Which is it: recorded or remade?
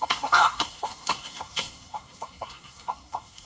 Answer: remade